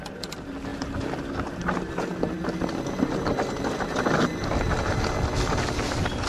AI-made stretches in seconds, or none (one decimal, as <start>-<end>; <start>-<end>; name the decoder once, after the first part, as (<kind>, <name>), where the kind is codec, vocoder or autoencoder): none